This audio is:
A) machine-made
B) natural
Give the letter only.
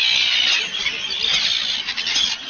B